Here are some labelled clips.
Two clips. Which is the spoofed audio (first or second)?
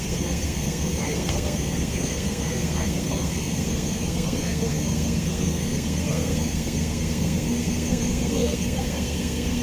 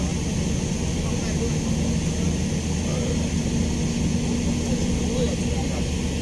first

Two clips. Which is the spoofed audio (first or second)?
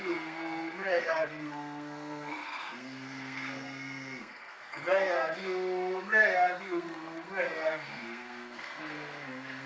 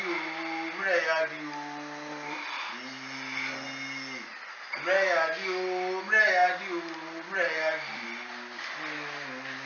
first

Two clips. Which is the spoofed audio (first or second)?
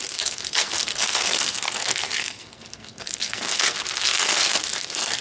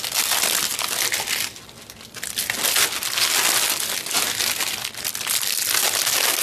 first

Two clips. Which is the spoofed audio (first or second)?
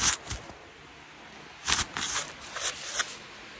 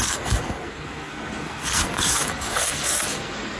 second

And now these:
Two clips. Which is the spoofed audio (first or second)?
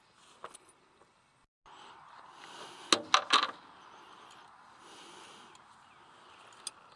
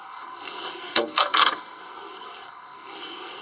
second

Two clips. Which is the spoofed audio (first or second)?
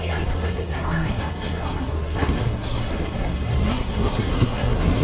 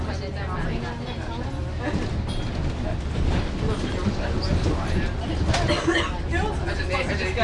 first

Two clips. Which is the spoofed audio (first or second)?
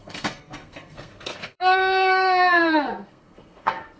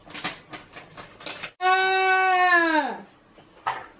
first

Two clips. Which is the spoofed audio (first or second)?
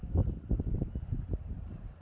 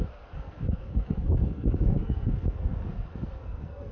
second